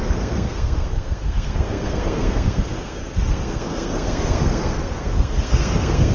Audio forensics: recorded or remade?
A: remade